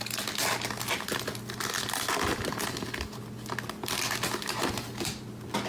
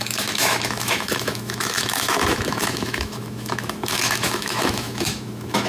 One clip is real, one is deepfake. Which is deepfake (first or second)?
second